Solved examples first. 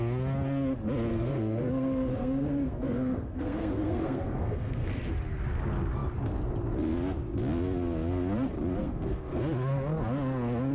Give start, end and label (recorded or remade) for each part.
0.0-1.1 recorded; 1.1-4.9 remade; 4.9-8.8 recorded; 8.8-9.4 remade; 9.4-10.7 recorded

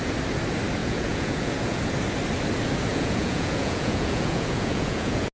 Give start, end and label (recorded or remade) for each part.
0.0-0.8 recorded; 0.8-1.8 remade; 1.8-2.9 recorded; 2.9-5.3 remade